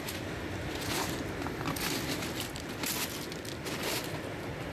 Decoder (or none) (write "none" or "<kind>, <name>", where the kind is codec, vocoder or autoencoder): none